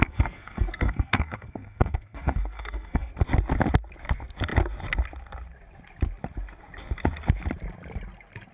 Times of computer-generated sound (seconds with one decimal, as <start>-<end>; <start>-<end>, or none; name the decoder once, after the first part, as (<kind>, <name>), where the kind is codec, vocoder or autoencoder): 0.0-3.1 (codec, SNAC)